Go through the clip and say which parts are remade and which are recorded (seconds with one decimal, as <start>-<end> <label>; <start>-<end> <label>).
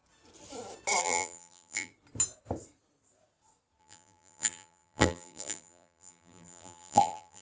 0.0-1.0 recorded; 1.0-1.9 remade; 1.9-3.8 recorded; 3.8-7.4 remade